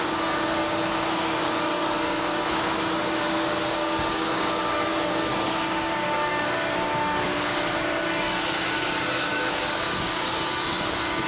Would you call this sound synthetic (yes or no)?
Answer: yes